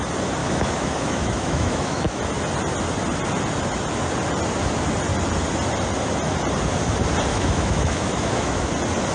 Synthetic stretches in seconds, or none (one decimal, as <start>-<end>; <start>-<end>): 0.4-2.2; 7.3-8.7